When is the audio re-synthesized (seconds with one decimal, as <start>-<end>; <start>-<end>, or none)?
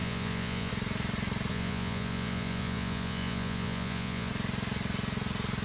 0.0-0.7; 1.5-4.3